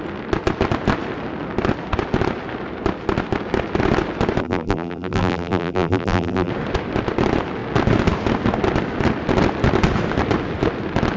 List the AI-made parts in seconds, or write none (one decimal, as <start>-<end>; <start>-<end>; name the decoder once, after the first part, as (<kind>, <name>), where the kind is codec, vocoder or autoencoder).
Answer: 4.4-6.5 (vocoder, BigVGAN v2)